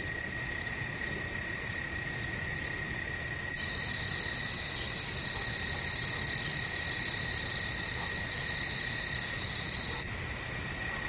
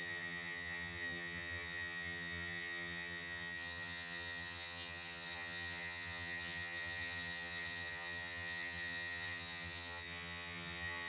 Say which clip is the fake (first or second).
second